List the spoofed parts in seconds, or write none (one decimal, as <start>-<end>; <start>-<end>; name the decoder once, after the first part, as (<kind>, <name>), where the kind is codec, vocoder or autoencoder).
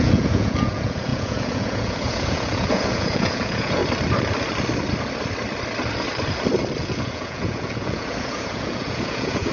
0.0-3.8 (vocoder, Vocos); 6.8-9.5